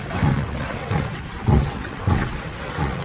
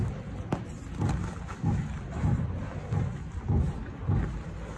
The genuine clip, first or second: second